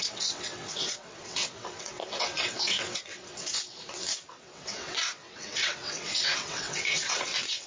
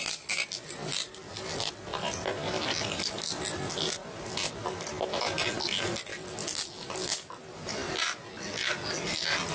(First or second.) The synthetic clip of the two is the first